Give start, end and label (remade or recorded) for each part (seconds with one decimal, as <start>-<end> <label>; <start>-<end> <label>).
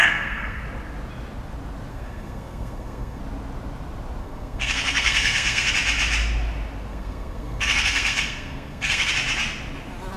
0.0-0.6 remade; 0.6-1.9 recorded; 1.9-3.2 remade; 3.2-4.2 recorded; 4.2-5.7 remade; 5.7-6.9 recorded; 6.9-9.1 remade; 9.1-10.2 recorded